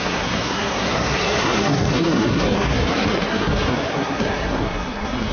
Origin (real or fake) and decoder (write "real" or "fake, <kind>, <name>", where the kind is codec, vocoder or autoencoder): fake, codec, SNAC